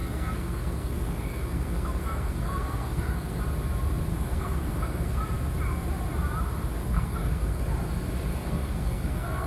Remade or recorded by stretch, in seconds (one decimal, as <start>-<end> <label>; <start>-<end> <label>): 0.0-3.4 remade; 3.4-4.1 recorded; 4.1-5.2 remade; 5.2-6.8 recorded; 6.8-7.6 remade; 7.6-8.3 recorded; 8.3-9.5 remade